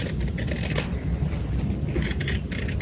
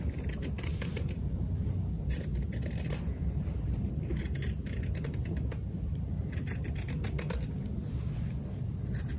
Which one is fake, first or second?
second